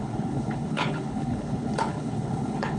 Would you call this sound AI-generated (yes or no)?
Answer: yes